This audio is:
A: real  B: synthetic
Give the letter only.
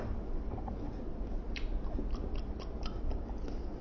A